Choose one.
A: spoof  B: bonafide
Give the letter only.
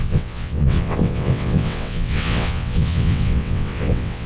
A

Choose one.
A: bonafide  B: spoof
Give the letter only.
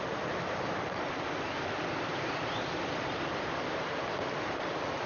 B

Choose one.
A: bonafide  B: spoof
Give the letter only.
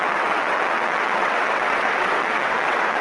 B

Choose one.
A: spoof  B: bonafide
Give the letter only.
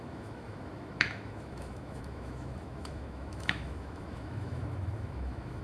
A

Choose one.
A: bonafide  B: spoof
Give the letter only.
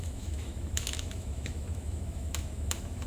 B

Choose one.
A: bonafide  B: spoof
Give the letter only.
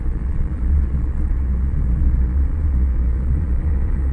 B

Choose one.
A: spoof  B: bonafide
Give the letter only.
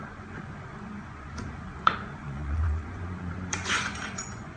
A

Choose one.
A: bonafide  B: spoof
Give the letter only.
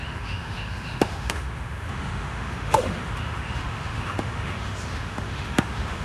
B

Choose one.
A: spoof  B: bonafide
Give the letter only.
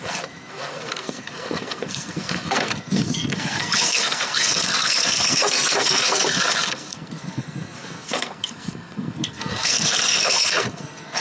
A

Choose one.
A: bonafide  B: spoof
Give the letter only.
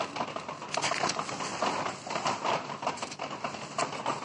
A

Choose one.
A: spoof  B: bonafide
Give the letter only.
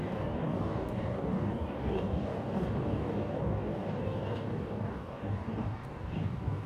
A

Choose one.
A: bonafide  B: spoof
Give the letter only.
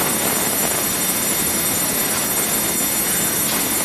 B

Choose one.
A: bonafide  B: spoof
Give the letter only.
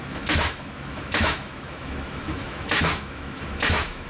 B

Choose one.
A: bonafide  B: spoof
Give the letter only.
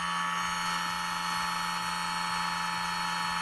A